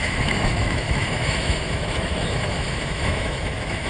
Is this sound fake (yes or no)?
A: yes